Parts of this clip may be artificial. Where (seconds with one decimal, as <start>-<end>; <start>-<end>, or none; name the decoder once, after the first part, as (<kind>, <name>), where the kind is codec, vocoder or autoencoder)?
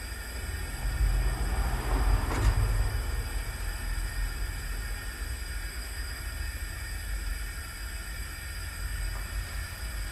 5.7-6.2 (autoencoder, DAC-VAE)